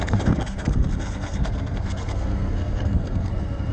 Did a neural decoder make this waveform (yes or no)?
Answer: yes